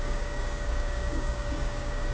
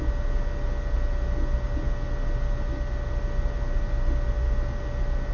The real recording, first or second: second